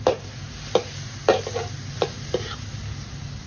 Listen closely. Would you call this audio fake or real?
real